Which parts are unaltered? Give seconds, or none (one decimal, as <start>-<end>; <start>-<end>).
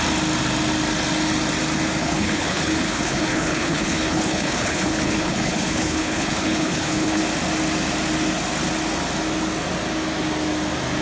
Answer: 0.0-2.0; 7.2-11.0